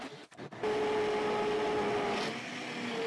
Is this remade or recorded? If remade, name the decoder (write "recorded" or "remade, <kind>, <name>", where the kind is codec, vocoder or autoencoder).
recorded